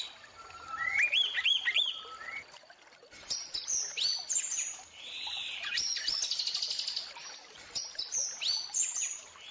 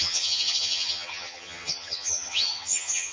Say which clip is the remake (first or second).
second